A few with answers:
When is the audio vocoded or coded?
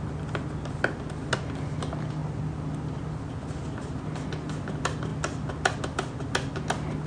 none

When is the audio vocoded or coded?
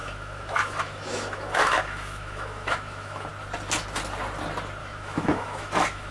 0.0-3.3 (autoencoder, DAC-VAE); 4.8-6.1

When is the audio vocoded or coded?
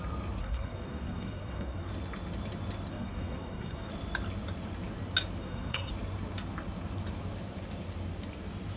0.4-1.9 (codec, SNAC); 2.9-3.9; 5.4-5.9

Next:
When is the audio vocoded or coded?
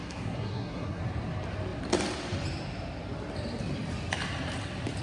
0.0-1.0 (codec, SNAC)